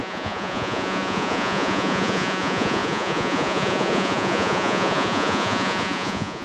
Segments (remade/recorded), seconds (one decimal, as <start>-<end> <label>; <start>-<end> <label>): 0.0-6.4 remade